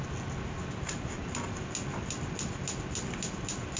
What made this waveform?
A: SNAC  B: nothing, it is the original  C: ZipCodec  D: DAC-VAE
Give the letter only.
B